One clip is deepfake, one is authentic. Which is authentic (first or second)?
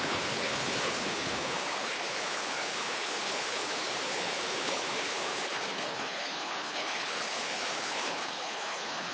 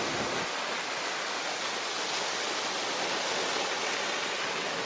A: second